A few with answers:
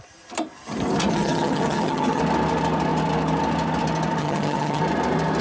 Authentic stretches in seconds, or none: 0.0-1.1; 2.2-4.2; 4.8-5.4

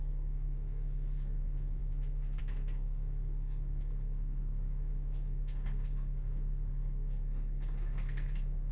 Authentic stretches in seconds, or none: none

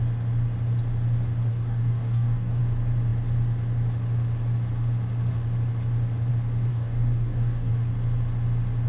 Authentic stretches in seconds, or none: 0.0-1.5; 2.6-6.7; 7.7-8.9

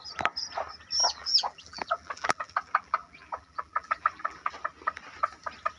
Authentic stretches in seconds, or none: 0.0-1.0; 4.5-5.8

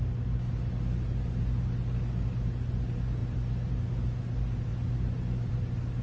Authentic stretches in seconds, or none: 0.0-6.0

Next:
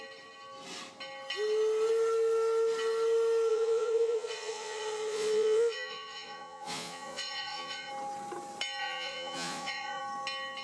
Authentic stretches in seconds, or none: 0.0-3.5; 7.9-8.8; 10.0-10.6

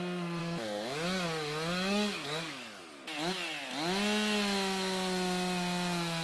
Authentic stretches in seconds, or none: 0.0-0.4; 2.8-6.2

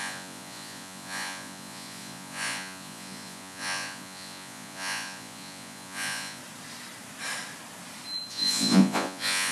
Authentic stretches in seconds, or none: 6.4-8.3